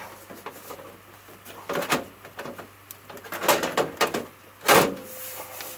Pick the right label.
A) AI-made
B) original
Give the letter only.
B